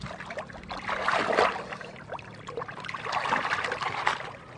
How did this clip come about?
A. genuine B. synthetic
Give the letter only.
A